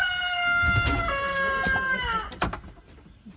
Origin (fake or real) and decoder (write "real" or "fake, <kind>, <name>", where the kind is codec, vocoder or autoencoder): real